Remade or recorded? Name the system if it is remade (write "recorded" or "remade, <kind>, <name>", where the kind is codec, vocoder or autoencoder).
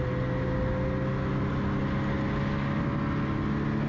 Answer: recorded